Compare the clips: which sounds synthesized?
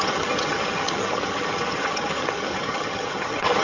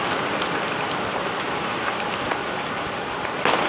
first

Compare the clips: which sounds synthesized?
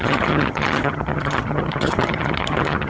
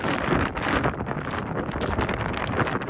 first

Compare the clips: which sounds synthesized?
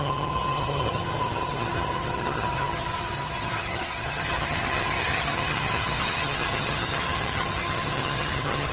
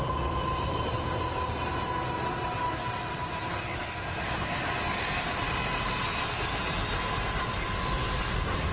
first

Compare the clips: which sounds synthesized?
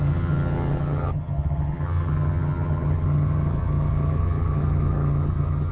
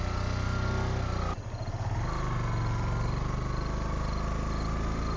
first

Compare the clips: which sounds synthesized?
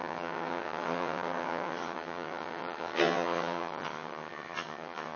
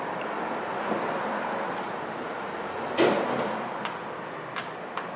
first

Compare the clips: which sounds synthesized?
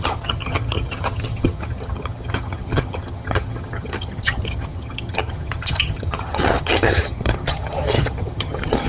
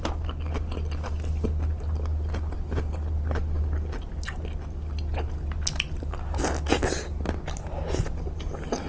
first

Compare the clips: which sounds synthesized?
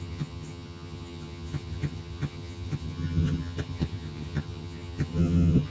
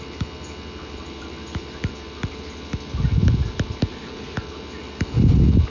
first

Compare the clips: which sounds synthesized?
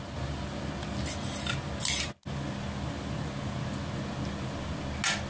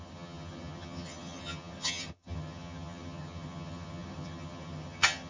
second